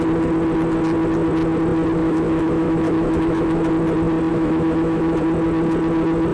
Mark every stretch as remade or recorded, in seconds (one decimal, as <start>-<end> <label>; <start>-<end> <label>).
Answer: 0.0-2.0 recorded; 2.0-3.7 remade; 3.7-4.3 recorded; 4.3-5.2 remade; 5.2-6.3 recorded